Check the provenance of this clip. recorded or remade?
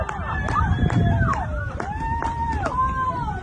recorded